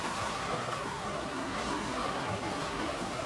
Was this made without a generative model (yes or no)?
no